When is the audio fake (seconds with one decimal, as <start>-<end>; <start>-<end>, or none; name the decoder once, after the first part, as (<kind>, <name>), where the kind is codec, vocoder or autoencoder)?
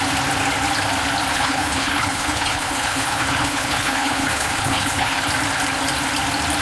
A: 1.3-5.3 (codec, HILCodec)